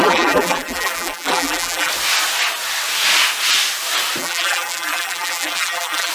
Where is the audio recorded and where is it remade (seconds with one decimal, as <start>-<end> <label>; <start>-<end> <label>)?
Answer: 0.0-1.9 remade; 1.9-4.2 recorded; 4.2-6.1 remade